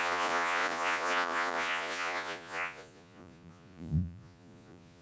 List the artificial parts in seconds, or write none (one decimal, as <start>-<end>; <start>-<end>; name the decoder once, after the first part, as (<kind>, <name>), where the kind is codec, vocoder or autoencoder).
0.0-5.0 (vocoder, Vocos)